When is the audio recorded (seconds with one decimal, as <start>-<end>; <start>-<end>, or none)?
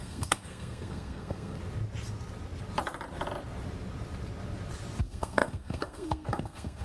1.6-5.0